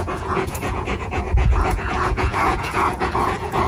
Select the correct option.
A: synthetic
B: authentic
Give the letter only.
A